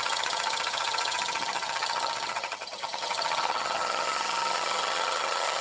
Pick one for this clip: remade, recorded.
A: remade